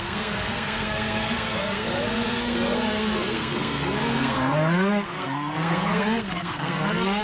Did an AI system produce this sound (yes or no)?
yes